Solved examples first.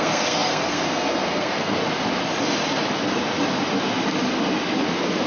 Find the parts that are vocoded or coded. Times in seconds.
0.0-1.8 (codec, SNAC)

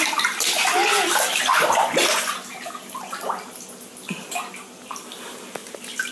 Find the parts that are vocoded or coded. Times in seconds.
none

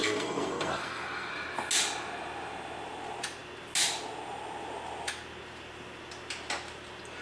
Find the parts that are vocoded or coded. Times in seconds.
0.0-1.3 (codec, SNAC)

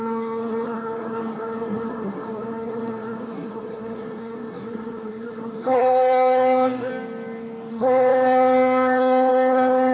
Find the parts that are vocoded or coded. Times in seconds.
0.0-6.9 (codec, SNAC); 7.7-9.9

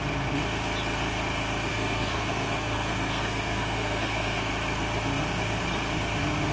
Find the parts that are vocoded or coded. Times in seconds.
1.7-4.5 (codec, SNAC)

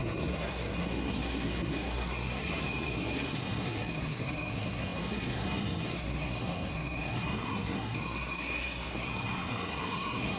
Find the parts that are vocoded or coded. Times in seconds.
0.0-10.4 (codec, SNAC)

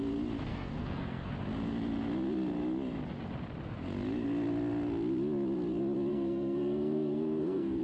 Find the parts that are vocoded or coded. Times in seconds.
0.5-1.3 (codec, SNAC); 6.1-7.8

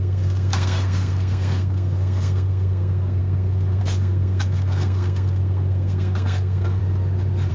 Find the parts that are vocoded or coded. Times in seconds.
0.0-6.8 (codec, SNAC)